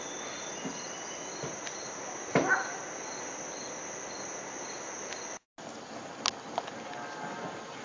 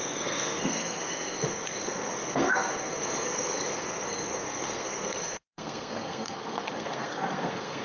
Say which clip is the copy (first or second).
second